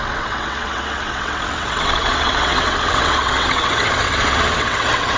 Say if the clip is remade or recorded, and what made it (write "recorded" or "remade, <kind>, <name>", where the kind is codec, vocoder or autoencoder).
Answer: remade, vocoder, WaveNeXt